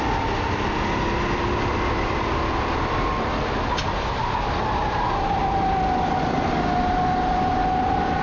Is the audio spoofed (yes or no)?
no